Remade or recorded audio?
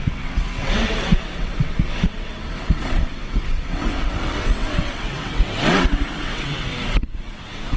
remade